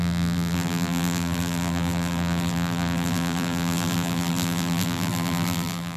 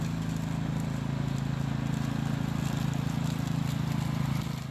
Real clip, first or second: second